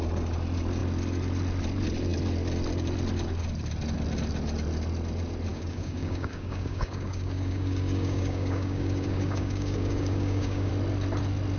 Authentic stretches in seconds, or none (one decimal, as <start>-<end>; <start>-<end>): 0.0-5.5; 10.7-11.6